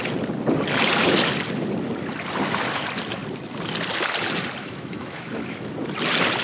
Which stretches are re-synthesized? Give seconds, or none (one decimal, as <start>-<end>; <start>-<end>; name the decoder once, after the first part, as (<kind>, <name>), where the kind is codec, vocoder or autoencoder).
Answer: 4.6-5.7 (autoencoder, DAC-VAE)